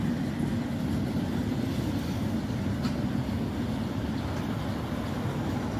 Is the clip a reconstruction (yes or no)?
no